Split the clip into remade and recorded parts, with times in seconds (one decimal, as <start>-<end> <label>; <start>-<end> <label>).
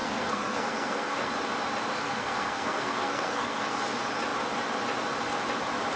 0.0-1.3 remade; 1.3-2.0 recorded; 2.0-3.8 remade; 3.8-6.0 recorded